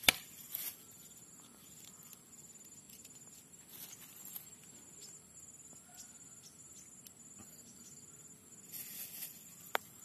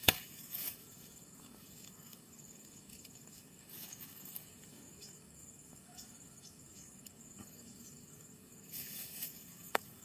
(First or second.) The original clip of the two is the first